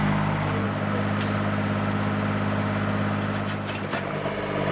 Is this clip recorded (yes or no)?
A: yes